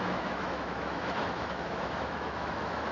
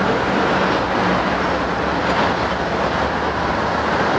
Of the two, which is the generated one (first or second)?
first